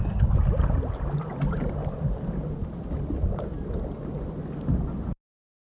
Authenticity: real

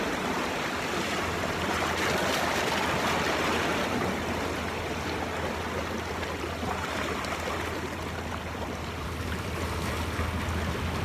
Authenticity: real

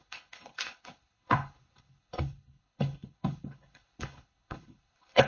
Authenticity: fake